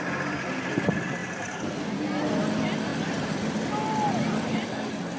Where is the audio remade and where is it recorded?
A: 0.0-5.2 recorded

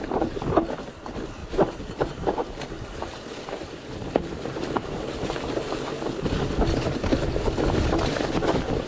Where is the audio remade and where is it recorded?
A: 0.0-1.4 recorded; 1.4-5.5 remade; 5.5-7.1 recorded; 7.1-8.3 remade; 8.3-8.9 recorded

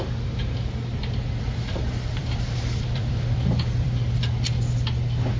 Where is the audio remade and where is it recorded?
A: 0.0-1.0 recorded; 1.0-4.2 remade; 4.2-5.4 recorded

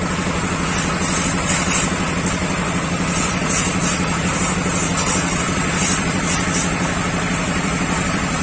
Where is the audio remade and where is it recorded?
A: 0.0-2.4 recorded; 2.4-6.3 remade; 6.3-7.4 recorded; 7.4-8.4 remade